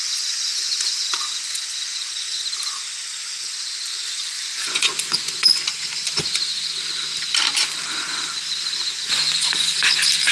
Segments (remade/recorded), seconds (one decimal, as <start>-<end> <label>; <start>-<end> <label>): 0.0-0.5 recorded; 0.5-2.4 remade; 2.4-3.9 recorded; 3.9-6.7 remade; 6.7-8.9 recorded; 8.9-9.8 remade; 9.8-10.3 recorded